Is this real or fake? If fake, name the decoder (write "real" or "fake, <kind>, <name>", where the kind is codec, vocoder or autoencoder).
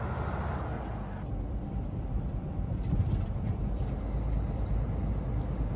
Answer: real